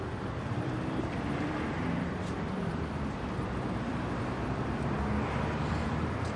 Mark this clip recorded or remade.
remade